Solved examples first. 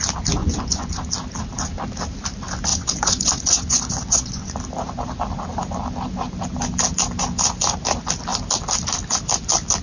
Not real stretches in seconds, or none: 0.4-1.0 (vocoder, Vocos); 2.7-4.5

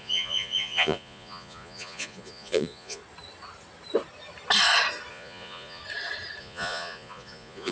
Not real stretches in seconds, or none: 0.0-3.0 (vocoder, Vocos); 5.1-5.8; 6.4-7.7